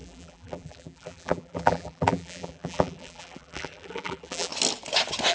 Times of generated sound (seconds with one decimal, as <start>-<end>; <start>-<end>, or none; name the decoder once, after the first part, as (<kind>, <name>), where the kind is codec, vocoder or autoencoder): 0.0-4.5 (vocoder, BigVGAN v2)